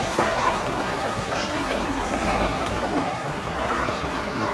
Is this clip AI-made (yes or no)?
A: yes